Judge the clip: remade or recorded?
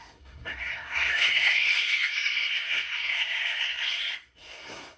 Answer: remade